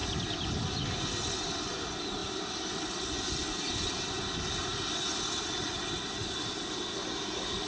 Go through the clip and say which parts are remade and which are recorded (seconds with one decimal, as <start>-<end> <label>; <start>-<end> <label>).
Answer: 0.0-7.7 recorded